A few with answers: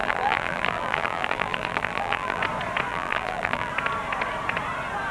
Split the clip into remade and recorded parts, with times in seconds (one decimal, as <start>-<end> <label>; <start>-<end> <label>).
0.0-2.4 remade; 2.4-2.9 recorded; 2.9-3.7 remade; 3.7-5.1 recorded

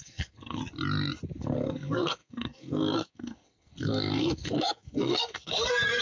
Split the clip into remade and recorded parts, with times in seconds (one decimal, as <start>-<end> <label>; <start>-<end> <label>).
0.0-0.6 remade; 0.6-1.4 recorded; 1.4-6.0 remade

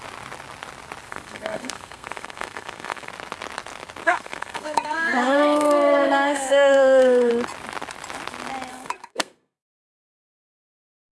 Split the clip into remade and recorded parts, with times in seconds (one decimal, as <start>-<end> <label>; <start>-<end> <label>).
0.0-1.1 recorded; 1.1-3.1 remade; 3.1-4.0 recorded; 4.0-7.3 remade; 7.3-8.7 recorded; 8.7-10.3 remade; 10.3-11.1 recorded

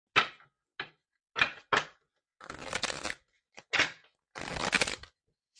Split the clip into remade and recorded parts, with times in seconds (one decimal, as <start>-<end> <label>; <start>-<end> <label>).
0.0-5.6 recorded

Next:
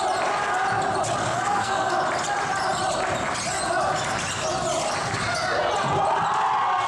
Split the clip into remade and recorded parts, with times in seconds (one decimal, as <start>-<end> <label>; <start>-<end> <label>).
0.0-1.2 recorded; 1.2-2.0 remade; 2.0-6.9 recorded

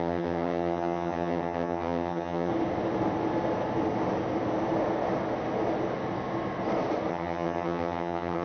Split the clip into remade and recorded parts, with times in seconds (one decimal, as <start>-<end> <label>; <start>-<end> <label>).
0.0-2.5 remade; 2.5-7.1 recorded; 7.1-8.4 remade